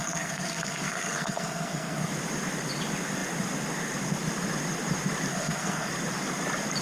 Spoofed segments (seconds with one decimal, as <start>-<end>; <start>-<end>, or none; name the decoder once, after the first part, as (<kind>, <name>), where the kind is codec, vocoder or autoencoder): 0.0-2.1 (codec, SNAC); 5.3-5.9